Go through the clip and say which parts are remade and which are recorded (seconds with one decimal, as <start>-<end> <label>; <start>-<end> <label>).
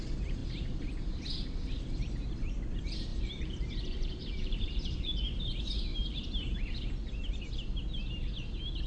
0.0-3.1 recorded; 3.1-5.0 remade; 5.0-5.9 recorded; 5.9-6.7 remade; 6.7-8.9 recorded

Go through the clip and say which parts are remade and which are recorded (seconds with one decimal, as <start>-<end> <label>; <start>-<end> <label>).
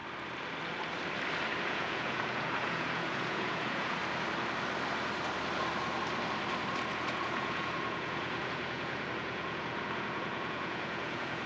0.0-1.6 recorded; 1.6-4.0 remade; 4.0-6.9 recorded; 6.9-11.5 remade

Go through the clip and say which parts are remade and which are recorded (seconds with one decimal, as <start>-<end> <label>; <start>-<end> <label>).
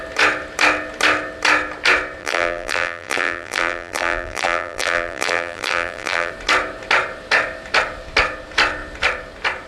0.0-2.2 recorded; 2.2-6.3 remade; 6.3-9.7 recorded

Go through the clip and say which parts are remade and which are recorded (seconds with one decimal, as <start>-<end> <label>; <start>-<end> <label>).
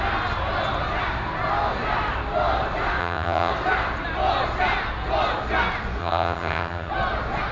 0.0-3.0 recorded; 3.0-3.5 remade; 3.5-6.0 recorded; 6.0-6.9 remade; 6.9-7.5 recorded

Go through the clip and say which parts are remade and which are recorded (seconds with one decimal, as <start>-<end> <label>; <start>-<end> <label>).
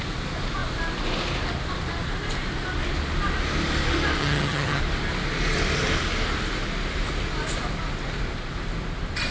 0.0-4.2 recorded; 4.2-4.8 remade; 4.8-9.3 recorded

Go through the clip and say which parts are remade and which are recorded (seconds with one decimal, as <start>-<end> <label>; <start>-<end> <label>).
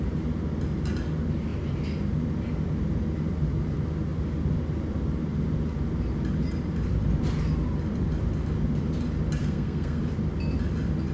0.0-9.4 recorded; 9.4-10.0 remade; 10.0-11.1 recorded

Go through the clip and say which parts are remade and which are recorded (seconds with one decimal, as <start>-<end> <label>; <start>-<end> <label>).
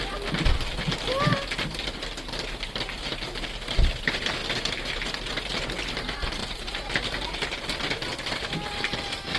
0.0-9.4 recorded